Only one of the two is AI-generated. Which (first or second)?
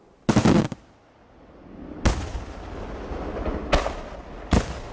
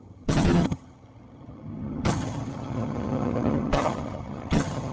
second